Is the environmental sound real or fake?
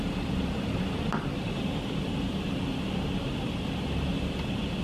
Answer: fake